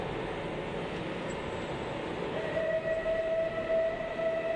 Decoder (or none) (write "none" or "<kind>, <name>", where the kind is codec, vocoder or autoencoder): none